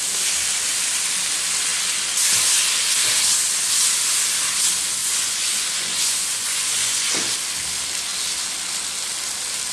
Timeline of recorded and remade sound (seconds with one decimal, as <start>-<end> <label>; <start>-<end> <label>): 0.0-5.0 recorded; 5.0-7.1 remade; 7.1-9.7 recorded